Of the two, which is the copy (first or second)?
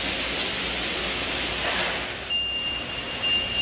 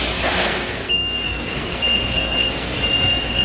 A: second